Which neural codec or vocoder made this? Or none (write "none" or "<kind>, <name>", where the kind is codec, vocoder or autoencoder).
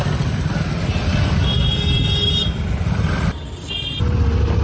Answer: none